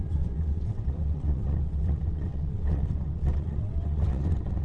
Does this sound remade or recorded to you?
remade